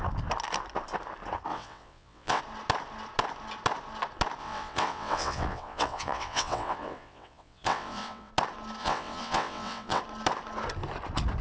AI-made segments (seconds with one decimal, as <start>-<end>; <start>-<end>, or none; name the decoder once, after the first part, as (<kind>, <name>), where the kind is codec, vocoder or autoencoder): 1.5-2.4 (vocoder, WaveNeXt); 4.4-8.3; 8.8-10.0